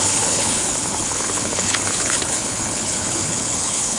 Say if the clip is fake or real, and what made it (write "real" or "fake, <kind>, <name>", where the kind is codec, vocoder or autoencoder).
fake, codec, HILCodec